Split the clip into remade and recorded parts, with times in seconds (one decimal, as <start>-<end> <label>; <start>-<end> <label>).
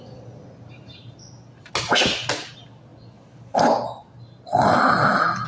0.0-5.5 recorded